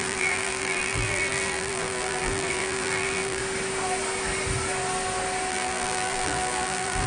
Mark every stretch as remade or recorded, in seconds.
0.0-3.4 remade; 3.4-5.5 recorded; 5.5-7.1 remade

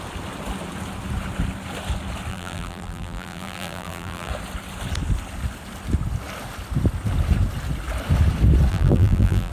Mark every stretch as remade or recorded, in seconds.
0.0-2.3 recorded; 2.3-4.3 remade; 4.3-8.7 recorded; 8.7-9.5 remade